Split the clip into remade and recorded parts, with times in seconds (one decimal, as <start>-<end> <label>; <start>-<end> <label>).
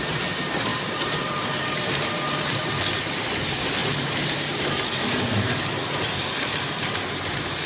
0.0-0.7 recorded; 0.7-2.7 remade; 2.7-3.8 recorded; 3.8-7.7 remade